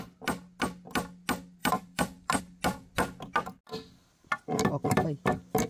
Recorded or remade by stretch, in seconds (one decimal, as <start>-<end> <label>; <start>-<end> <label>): 0.0-1.6 recorded; 1.6-2.4 remade; 2.4-4.8 recorded; 4.8-5.7 remade